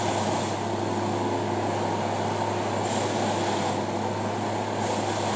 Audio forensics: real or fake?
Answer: real